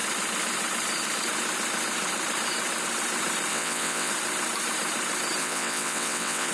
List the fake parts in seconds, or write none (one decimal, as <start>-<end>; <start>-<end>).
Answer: 3.5-4.1; 5.4-6.5